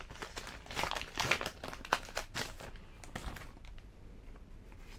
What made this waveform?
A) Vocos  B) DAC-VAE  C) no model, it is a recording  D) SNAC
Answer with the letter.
C